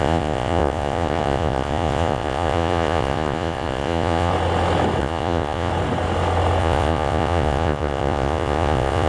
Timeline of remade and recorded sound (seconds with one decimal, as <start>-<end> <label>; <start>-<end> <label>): 0.0-4.3 remade; 4.3-5.0 recorded; 5.0-5.7 remade; 5.7-6.6 recorded; 6.6-9.1 remade